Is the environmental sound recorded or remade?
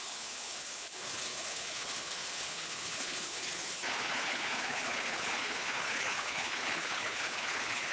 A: remade